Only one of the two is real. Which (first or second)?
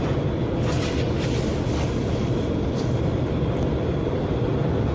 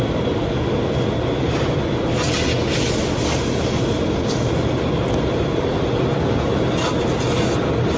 second